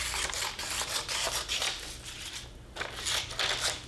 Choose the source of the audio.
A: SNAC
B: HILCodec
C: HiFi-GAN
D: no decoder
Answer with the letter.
D